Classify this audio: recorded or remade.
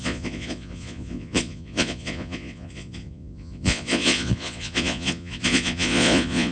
remade